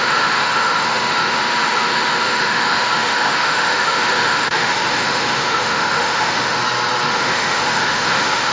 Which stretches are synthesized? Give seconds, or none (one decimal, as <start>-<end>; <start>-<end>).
0.0-6.6; 7.1-8.5